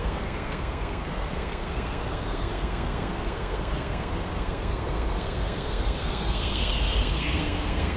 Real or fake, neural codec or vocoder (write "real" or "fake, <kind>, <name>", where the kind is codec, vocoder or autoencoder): fake, codec, SNAC